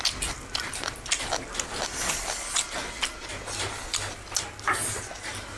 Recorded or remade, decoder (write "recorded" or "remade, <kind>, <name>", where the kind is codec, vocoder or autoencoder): recorded